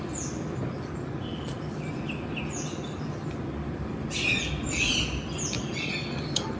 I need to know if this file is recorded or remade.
recorded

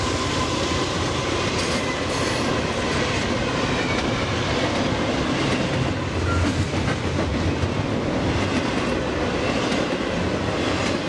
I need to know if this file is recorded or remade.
recorded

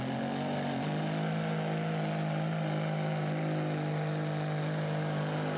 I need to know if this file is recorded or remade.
recorded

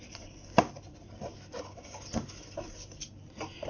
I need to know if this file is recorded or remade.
recorded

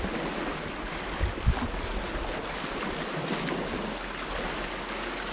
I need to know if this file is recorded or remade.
recorded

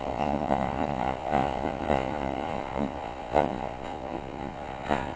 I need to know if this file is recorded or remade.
remade